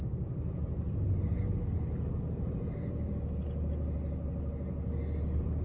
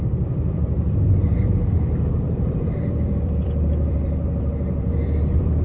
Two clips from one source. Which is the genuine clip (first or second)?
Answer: first